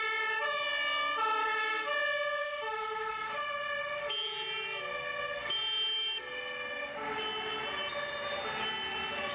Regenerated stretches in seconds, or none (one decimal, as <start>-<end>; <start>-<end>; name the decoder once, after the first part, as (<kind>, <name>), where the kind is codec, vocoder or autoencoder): 1.4-1.9 (codec, DAC); 2.4-3.4